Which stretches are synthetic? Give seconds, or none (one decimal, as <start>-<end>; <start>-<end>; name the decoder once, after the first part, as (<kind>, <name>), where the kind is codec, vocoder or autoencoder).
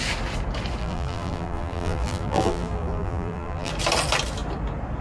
0.8-3.7 (vocoder, BigVGAN v2)